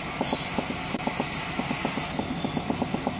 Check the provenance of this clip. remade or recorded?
recorded